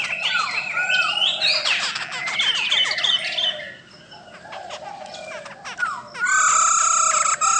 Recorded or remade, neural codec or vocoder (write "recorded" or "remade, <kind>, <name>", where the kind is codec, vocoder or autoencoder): recorded